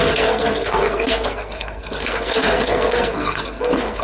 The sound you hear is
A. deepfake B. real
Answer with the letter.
A